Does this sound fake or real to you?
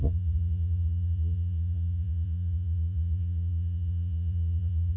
fake